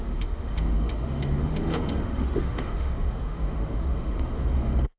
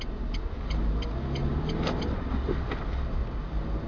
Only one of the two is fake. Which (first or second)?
first